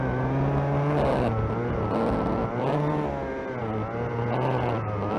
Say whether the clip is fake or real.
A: real